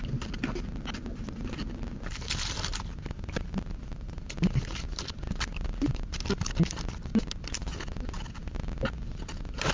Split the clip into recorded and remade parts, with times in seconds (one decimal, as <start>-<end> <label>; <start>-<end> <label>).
0.0-9.7 recorded